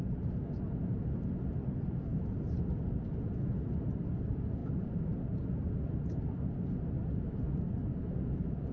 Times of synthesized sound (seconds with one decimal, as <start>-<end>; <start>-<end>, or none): 2.1-2.8